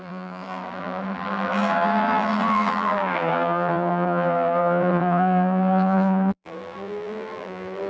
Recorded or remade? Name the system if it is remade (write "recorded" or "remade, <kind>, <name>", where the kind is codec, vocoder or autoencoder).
remade, vocoder, BigVGAN v2